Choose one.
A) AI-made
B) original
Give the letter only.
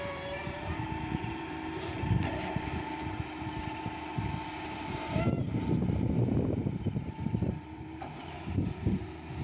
A